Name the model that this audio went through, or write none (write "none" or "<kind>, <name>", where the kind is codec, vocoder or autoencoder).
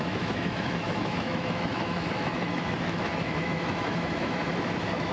autoencoder, DAC-VAE